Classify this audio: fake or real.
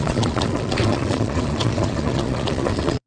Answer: fake